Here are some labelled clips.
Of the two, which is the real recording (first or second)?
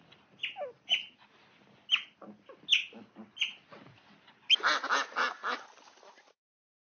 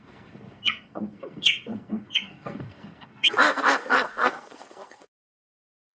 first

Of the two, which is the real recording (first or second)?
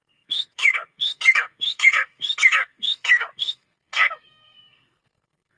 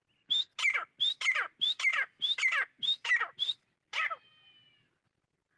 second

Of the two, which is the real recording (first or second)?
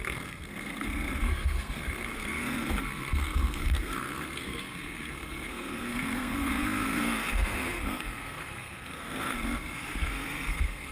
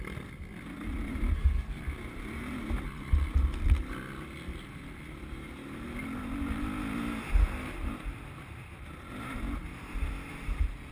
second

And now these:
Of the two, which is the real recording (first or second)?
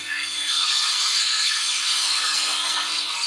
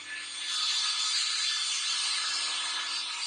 second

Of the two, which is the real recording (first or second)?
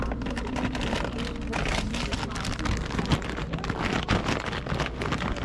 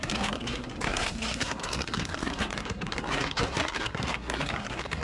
first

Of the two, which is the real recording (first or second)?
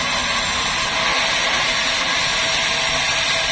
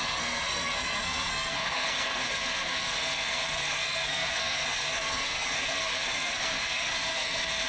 first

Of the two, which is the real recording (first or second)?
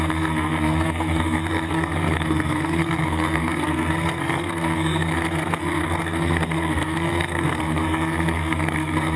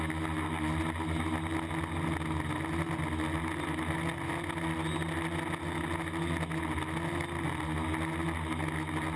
second